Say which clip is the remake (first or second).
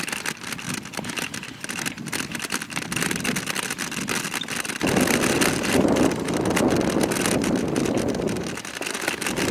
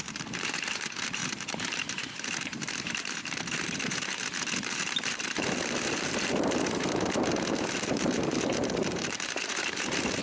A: second